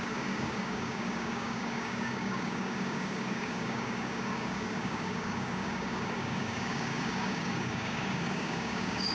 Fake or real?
fake